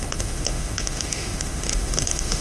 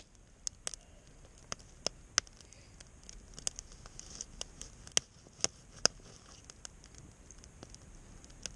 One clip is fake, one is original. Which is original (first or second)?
second